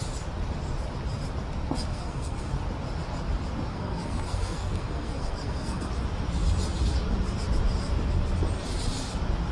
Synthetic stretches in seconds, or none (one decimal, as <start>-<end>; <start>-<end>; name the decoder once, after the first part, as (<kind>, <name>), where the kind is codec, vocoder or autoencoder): 1.9-2.5 (codec, SNAC); 3.7-5.9